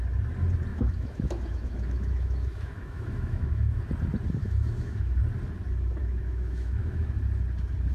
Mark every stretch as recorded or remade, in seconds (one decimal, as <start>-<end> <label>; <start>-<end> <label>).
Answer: 0.0-0.7 recorded; 0.7-3.9 remade; 3.9-4.4 recorded; 4.4-5.2 remade; 5.2-6.0 recorded; 6.0-7.1 remade; 7.1-7.9 recorded